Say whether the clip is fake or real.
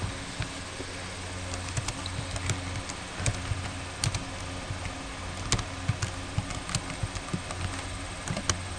real